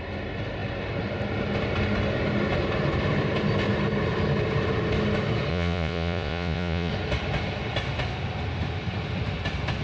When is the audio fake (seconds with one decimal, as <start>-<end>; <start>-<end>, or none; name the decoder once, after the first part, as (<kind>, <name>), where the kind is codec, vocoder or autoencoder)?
5.5-6.9 (vocoder, Vocos)